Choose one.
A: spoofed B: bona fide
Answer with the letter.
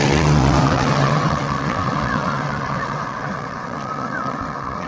A